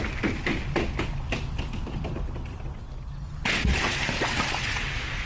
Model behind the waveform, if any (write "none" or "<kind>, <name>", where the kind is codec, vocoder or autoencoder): none